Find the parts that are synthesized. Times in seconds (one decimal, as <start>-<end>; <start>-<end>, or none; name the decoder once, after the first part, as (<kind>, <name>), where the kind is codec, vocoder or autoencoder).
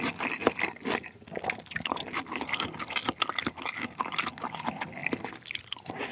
none